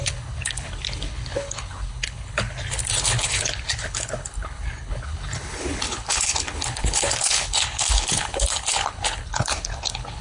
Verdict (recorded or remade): remade